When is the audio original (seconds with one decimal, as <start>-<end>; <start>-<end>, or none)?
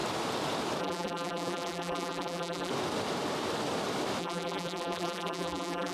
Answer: 0.0-0.8; 2.7-4.2